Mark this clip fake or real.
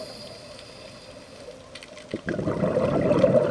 real